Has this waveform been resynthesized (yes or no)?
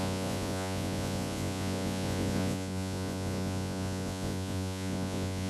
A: yes